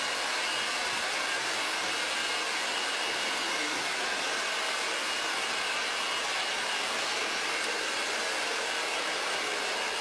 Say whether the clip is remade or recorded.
recorded